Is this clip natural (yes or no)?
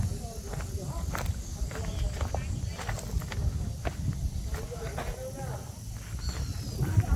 yes